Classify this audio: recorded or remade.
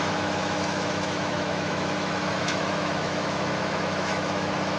remade